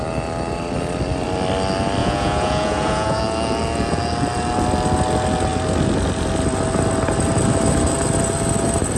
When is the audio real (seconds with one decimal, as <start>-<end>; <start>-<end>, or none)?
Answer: 0.0-2.0; 3.2-9.0